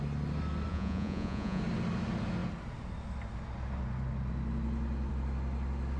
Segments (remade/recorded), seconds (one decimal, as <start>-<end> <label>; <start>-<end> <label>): 0.0-0.7 recorded; 0.7-1.6 remade; 1.6-6.0 recorded